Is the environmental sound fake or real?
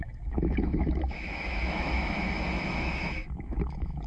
fake